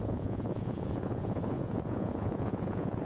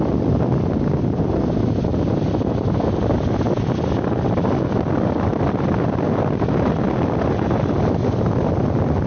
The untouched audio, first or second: second